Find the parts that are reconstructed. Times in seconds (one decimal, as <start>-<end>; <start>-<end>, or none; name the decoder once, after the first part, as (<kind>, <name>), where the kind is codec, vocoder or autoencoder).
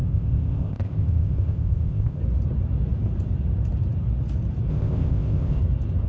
0.0-2.2 (codec, ZipCodec); 4.7-5.6